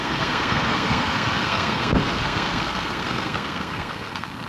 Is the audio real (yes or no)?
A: no